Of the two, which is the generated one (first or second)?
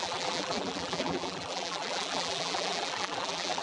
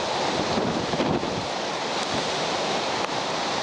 first